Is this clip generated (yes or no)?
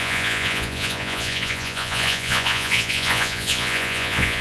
yes